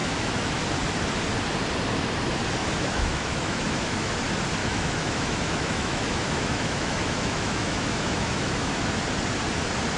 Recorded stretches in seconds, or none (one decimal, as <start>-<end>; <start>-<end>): 0.6-2.6; 4.1-4.6; 8.9-10.0